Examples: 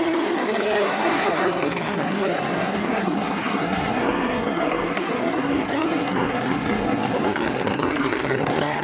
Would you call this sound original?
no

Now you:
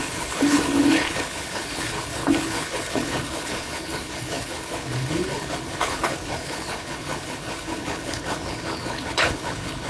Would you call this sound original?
no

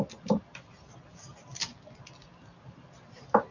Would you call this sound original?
yes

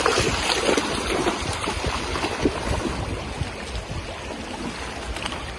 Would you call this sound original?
yes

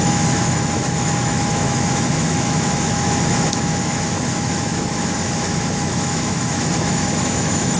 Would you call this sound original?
no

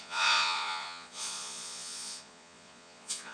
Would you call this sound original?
no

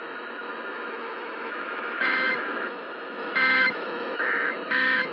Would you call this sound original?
no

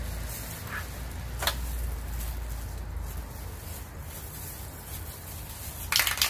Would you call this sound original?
yes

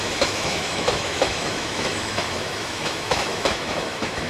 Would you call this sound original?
no